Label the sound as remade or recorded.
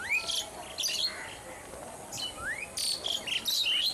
recorded